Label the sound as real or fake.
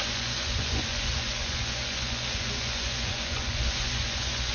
fake